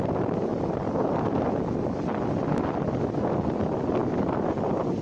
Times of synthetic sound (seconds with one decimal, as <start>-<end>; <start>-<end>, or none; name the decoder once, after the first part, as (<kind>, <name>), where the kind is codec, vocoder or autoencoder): none